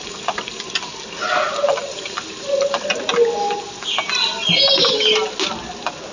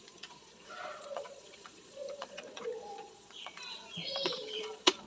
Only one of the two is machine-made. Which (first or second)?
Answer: second